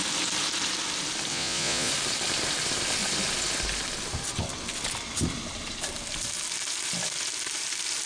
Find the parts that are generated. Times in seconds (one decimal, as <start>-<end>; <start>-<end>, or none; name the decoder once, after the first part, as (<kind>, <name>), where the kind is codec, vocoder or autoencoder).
1.3-1.9 (vocoder, Vocos)